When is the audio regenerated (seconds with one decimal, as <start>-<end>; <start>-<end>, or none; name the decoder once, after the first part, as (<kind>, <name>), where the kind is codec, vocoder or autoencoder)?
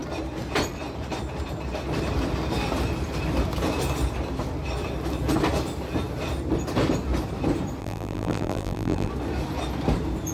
7.8-9.1 (vocoder, BigVGAN v2)